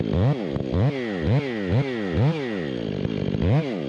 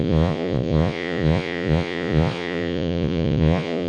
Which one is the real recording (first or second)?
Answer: first